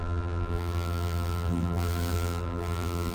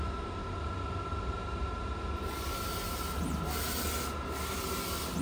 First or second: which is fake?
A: first